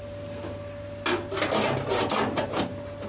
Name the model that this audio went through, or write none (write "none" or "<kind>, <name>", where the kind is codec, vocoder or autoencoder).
none